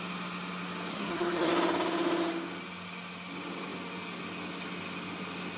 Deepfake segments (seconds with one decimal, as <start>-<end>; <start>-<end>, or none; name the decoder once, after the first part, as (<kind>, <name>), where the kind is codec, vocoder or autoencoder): 0.9-1.5 (codec, SNAC)